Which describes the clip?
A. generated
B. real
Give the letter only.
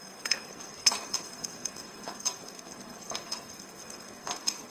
A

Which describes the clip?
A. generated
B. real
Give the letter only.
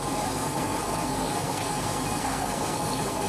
A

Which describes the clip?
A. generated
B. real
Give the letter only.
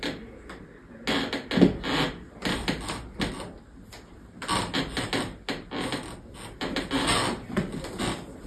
B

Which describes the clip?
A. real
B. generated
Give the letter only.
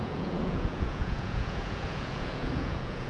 B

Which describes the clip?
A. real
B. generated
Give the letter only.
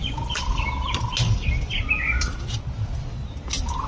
A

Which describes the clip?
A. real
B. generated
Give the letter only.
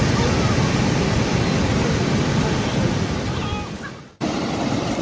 A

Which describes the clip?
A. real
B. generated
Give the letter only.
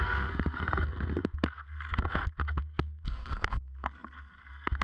B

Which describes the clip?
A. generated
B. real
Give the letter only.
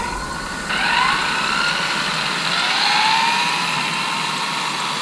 B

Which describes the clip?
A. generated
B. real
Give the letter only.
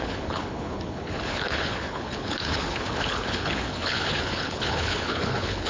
A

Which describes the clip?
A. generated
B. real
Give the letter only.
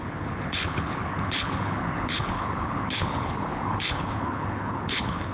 A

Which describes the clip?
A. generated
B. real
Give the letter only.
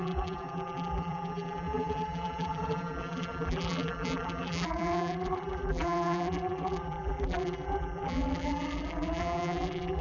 A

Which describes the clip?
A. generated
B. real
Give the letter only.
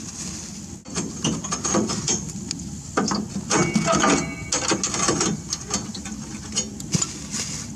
B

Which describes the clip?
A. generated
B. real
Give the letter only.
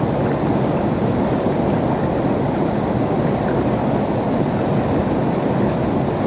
B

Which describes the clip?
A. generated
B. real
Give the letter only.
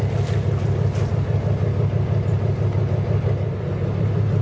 B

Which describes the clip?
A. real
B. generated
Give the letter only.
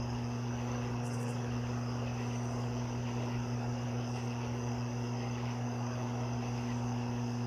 B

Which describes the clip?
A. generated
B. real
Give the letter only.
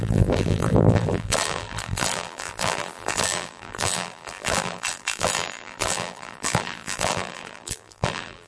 A